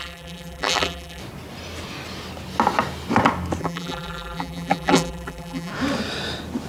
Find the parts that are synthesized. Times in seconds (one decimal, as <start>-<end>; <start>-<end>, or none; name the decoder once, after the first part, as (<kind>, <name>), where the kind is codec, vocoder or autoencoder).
0.0-1.2 (vocoder, BigVGAN v2); 3.6-5.7